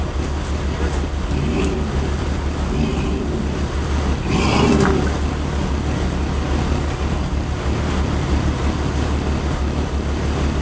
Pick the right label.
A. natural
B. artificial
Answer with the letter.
A